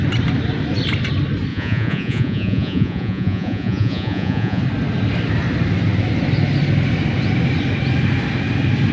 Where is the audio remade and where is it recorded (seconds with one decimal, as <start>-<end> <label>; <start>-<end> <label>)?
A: 0.0-1.5 recorded; 1.5-4.6 remade; 4.6-8.9 recorded

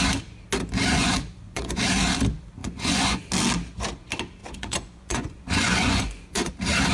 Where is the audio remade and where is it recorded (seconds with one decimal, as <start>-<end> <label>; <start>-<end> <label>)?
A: 0.0-0.9 recorded; 0.9-1.8 remade; 1.8-2.6 recorded; 2.6-3.2 remade; 3.2-4.4 recorded; 4.4-6.5 remade; 6.5-6.9 recorded